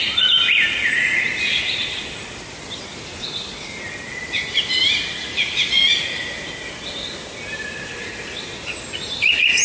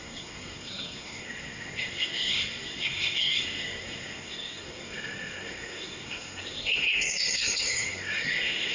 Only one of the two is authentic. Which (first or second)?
first